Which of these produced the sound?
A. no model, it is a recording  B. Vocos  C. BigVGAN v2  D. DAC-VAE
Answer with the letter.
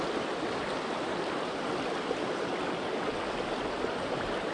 C